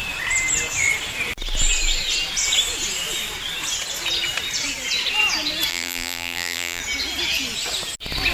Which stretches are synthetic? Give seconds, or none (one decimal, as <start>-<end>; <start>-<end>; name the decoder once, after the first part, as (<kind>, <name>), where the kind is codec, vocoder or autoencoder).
5.7-6.8 (vocoder, BigVGAN v2)